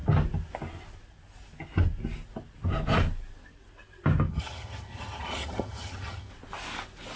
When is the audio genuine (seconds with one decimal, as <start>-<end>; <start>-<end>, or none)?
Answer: 0.0-4.3; 6.3-7.2